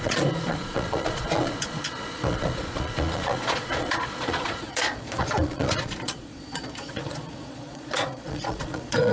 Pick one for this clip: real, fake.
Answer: fake